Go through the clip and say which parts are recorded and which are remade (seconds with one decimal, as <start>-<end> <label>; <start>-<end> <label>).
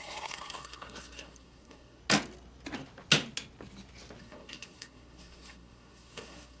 0.0-2.0 remade; 2.0-4.2 recorded; 4.2-6.6 remade